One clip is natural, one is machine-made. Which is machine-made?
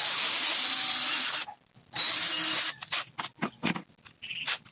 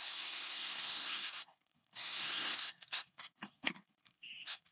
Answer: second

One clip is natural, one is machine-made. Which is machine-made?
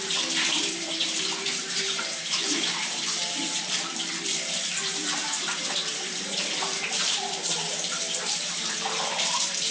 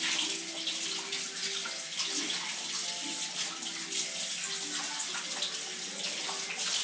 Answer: first